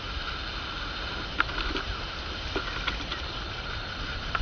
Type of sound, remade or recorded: recorded